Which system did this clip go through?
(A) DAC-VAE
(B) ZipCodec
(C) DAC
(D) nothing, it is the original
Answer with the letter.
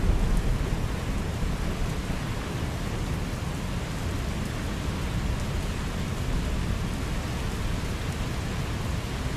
D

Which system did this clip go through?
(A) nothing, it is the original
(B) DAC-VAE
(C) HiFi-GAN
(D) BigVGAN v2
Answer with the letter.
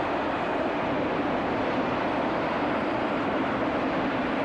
D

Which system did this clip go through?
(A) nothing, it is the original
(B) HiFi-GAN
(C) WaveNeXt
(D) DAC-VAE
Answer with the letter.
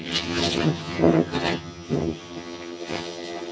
B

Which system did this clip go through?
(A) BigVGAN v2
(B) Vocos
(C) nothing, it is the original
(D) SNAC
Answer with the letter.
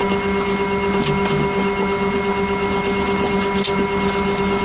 C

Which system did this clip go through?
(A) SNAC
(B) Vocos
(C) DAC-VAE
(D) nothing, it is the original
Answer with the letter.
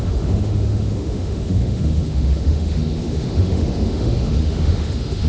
C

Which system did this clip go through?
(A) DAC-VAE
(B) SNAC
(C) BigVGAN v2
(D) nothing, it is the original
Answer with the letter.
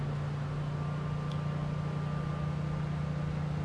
D